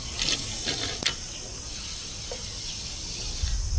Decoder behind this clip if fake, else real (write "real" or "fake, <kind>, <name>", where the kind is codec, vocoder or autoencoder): real